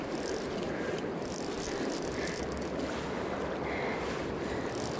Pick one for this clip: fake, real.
real